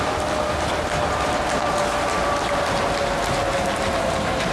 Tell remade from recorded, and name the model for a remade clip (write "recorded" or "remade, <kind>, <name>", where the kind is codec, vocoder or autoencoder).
recorded